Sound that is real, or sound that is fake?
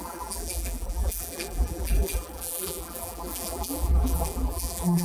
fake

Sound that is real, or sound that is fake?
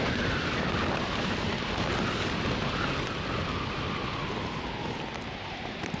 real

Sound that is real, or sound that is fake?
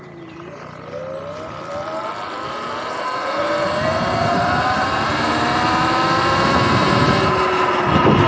real